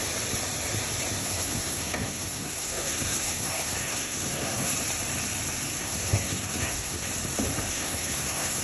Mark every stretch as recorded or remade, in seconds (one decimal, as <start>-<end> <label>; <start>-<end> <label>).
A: 0.0-1.2 recorded; 1.2-4.8 remade; 4.8-5.8 recorded; 5.8-7.1 remade; 7.1-7.7 recorded; 7.7-8.6 remade